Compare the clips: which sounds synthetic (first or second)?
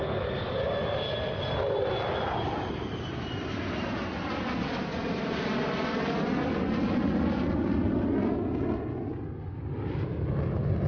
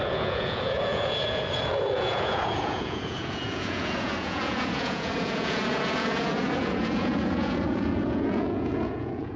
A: second